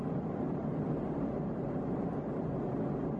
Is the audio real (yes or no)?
yes